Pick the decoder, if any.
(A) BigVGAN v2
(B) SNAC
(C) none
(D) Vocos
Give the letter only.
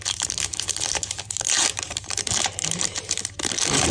A